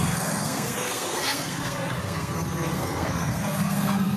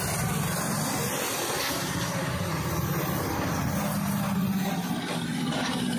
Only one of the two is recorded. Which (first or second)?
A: second